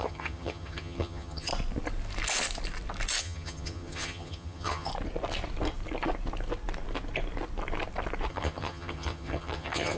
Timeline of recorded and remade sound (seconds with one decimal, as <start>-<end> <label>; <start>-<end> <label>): 0.0-1.5 remade; 1.5-3.2 recorded; 3.2-4.9 remade; 4.9-8.3 recorded; 8.3-10.0 remade